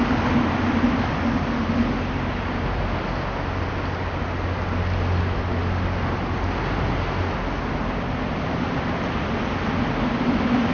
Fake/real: real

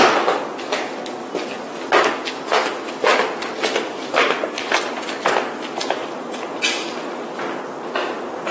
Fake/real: real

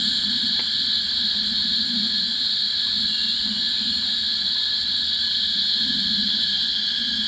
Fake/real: real